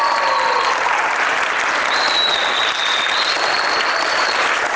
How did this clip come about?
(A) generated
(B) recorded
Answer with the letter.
B